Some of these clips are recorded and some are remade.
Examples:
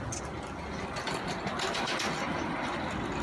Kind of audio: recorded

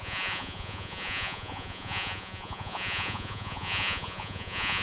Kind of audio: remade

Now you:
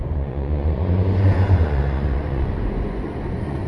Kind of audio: remade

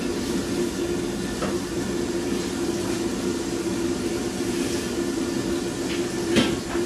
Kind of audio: recorded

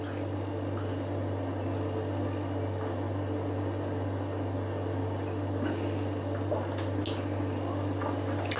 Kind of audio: recorded